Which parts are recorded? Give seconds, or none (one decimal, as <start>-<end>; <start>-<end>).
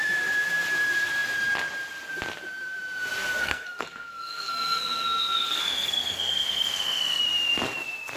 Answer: 0.0-3.4; 7.2-8.2